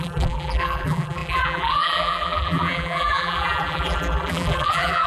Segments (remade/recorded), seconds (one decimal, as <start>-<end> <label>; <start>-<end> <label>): 0.0-5.1 remade